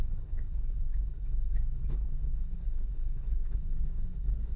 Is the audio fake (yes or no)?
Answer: yes